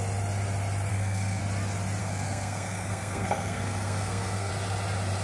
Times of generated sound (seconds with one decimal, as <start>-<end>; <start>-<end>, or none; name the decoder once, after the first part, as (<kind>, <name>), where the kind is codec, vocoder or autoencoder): 0.9-1.4 (codec, SNAC); 2.0-4.5